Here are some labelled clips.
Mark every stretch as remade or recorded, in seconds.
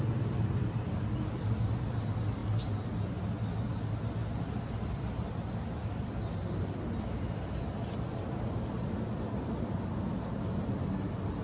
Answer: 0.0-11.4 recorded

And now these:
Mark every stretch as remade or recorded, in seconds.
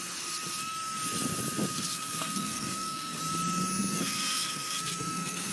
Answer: 0.0-1.7 recorded; 1.7-3.2 remade; 3.2-3.9 recorded; 3.9-5.5 remade